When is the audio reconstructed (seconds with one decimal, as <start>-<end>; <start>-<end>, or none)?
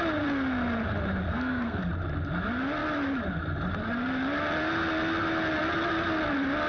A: 1.3-1.9